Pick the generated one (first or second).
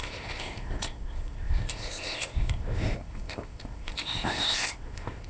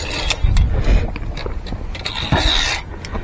first